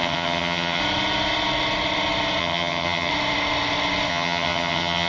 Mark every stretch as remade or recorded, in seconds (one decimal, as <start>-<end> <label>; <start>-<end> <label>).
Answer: 0.0-0.8 remade; 0.8-2.4 recorded; 2.4-3.1 remade; 3.1-4.1 recorded; 4.1-5.1 remade